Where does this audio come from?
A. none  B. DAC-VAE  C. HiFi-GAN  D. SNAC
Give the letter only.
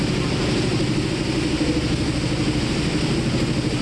A